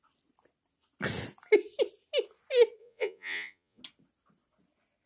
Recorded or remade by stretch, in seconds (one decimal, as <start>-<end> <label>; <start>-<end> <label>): 0.0-2.8 recorded; 2.8-3.8 remade; 3.8-5.1 recorded